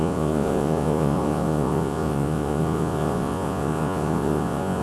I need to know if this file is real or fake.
fake